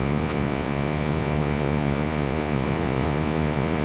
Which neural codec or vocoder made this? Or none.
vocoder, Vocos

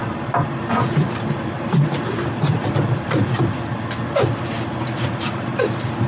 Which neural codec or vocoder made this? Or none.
vocoder, BigVGAN v2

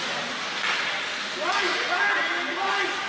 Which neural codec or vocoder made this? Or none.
none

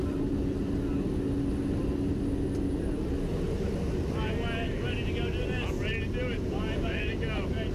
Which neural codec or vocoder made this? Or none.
none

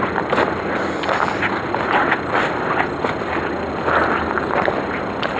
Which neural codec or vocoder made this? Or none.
none